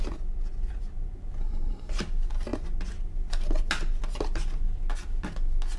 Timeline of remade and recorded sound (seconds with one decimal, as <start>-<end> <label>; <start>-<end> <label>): 0.0-1.4 recorded; 1.4-1.9 remade; 1.9-5.8 recorded